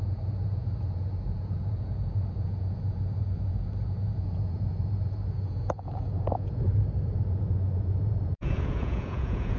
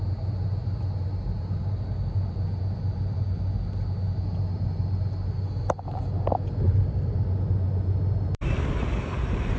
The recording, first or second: second